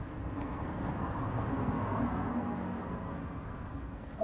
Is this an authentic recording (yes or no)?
no